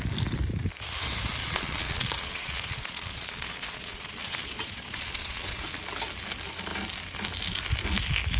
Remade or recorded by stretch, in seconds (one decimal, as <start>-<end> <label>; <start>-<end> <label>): 0.0-1.4 recorded; 1.4-5.8 remade; 5.8-8.4 recorded